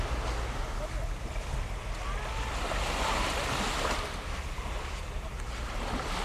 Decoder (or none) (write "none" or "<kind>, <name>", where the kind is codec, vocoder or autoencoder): none